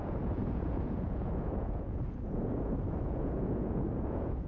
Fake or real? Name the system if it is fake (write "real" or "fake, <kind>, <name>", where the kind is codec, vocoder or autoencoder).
fake, vocoder, Vocos